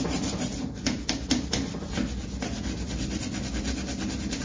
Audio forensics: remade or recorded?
recorded